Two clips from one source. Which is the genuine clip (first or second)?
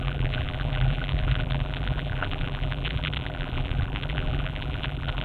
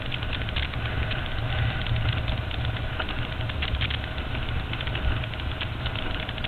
second